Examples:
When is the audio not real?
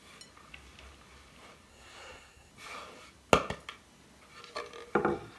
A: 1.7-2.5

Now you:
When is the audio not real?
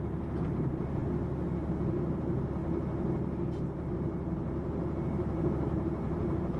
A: 0.0-1.0; 2.2-2.6; 3.6-4.4; 5.0-6.6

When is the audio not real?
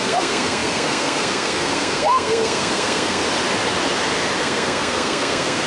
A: 0.0-3.2; 4.4-5.7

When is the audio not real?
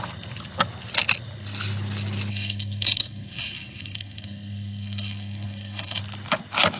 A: 2.3-6.0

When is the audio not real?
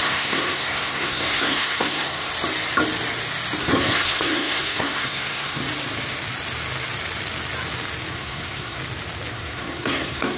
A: 0.0-2.3; 3.6-5.6; 8.1-8.8; 9.3-10.4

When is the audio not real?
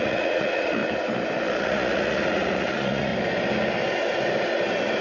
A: 0.0-0.8; 1.6-3.1